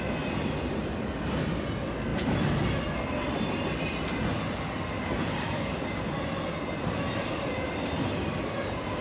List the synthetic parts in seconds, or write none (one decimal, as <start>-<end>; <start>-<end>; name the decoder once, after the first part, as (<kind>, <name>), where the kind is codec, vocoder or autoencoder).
none